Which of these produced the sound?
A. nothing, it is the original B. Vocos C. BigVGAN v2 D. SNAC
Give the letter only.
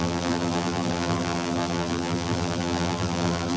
C